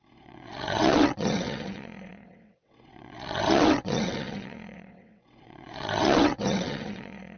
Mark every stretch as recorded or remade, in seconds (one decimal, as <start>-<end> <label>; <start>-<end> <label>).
0.0-7.4 remade

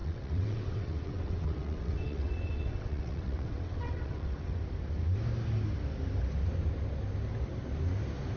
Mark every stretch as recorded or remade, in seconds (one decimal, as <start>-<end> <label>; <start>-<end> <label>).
0.0-4.6 remade; 4.6-8.4 recorded

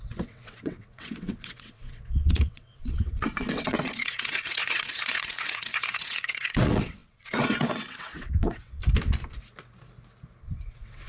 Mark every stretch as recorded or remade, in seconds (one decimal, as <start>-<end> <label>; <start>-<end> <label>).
0.0-8.8 remade; 8.8-10.4 recorded; 10.4-11.1 remade

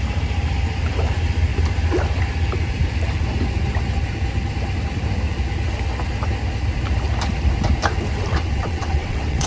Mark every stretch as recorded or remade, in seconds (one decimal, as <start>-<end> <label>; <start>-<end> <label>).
0.0-8.3 recorded; 8.3-9.5 remade

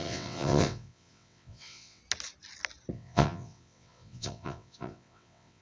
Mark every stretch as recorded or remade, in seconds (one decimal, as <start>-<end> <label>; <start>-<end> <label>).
0.0-2.0 remade; 2.0-2.9 recorded; 2.9-5.6 remade

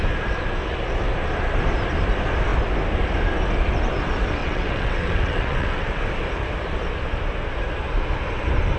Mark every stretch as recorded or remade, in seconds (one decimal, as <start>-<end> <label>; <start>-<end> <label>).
0.0-4.4 recorded; 4.4-6.0 remade; 6.0-8.8 recorded

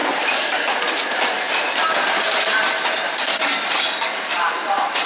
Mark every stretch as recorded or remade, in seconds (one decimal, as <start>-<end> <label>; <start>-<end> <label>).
0.0-5.1 recorded